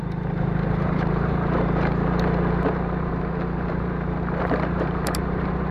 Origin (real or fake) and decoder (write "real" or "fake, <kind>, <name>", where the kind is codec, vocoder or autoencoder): fake, vocoder, BigVGAN v2